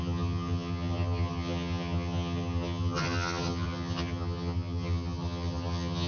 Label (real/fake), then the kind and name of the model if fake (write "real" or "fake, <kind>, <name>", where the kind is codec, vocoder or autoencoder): fake, vocoder, HiFi-GAN